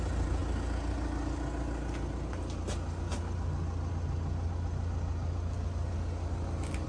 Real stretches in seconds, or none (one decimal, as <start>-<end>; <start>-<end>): 0.0-6.9